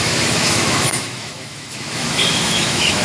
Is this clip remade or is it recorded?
remade